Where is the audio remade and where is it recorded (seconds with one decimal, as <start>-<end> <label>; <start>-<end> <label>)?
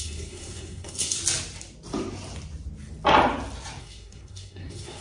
0.0-1.2 remade; 1.2-3.8 recorded; 3.8-5.0 remade